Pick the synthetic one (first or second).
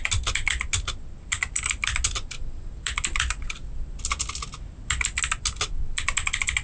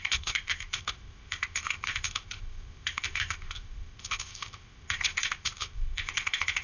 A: second